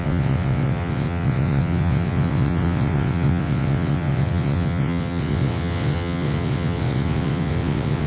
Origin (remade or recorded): remade